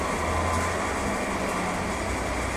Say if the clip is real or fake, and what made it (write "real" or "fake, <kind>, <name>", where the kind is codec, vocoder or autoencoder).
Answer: real